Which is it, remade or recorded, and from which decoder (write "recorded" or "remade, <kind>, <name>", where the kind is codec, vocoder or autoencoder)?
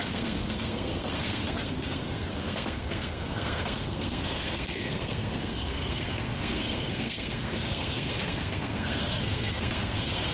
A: remade, codec, SNAC